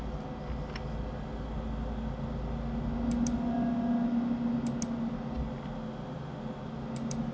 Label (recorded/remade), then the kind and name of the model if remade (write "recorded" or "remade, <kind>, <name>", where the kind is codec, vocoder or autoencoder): recorded